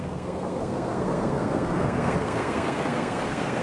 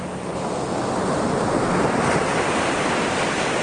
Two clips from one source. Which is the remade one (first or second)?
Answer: first